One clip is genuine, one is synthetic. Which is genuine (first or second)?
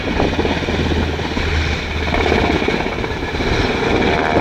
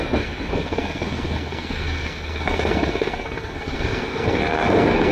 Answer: first